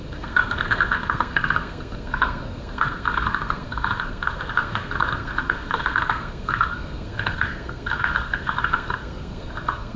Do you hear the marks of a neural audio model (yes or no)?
yes